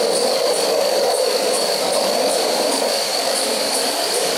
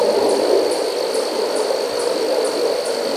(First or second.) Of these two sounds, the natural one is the second